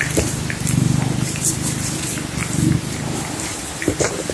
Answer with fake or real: fake